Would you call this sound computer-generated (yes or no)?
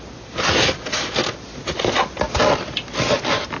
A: no